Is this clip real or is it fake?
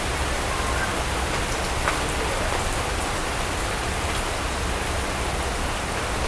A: real